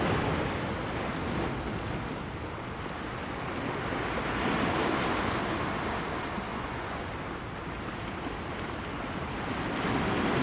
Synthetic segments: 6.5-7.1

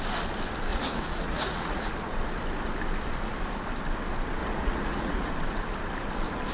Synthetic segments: 0.7-1.9; 4.4-5.3

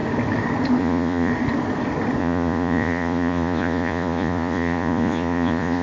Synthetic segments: 0.8-1.3; 2.2-5.8

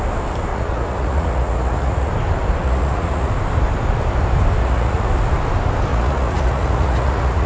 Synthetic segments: 0.5-2.1; 2.6-3.3; 4.6-5.1; 5.9-7.5

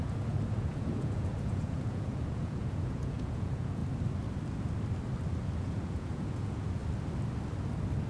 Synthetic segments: 0.0-3.8; 5.6-6.8

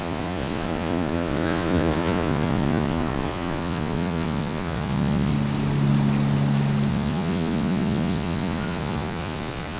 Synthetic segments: 0.0-5.3; 6.9-9.8